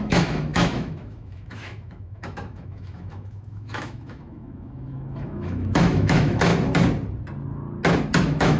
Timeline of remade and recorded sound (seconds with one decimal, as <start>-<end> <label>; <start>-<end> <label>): 0.0-6.5 remade; 6.5-8.2 recorded; 8.2-8.6 remade